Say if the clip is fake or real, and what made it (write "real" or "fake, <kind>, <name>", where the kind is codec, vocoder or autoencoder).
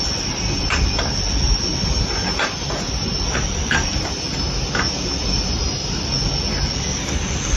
real